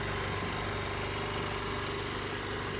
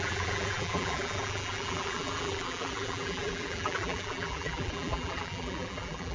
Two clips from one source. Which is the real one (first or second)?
first